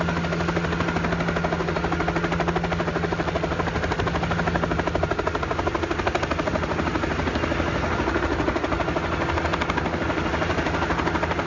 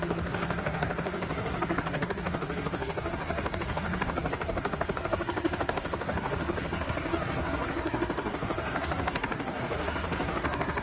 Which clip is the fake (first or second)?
second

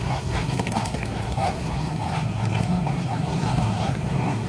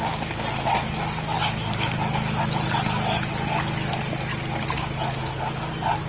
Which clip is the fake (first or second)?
first